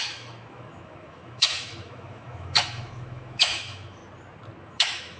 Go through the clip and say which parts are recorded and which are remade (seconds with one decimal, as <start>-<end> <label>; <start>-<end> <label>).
0.0-4.0 remade; 4.0-4.6 recorded; 4.6-5.2 remade